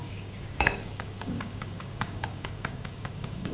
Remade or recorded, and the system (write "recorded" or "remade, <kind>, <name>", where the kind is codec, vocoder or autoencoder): remade, codec, DAC